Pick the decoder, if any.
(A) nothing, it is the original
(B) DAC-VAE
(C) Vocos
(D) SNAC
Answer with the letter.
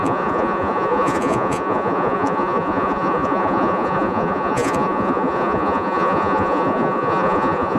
C